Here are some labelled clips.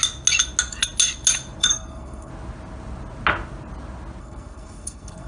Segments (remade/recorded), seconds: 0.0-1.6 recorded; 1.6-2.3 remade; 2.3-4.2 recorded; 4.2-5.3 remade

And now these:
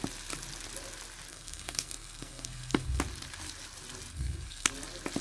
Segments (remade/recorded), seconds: 0.0-1.3 recorded; 1.3-3.0 remade; 3.0-4.1 recorded; 4.1-4.7 remade; 4.7-5.2 recorded